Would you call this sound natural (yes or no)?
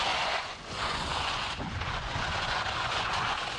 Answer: no